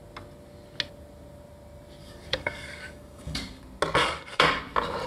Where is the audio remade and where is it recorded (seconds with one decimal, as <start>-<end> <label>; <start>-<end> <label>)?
0.0-2.0 recorded; 2.0-3.6 remade; 3.6-4.0 recorded; 4.0-4.6 remade; 4.6-5.1 recorded